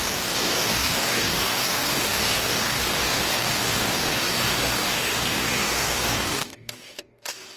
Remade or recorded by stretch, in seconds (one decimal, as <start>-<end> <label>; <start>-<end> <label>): 0.0-7.6 remade